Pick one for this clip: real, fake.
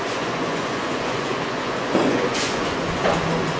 fake